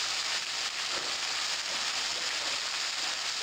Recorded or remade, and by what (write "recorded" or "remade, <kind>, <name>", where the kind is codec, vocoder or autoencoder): recorded